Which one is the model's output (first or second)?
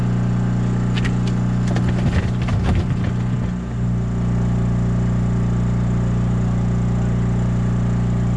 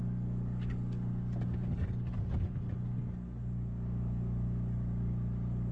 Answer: second